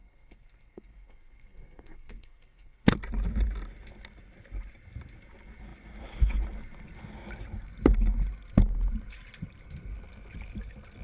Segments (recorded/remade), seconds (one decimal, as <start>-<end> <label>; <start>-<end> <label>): 0.0-3.0 remade; 3.0-11.0 recorded